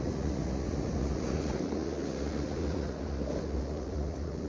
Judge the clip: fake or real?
fake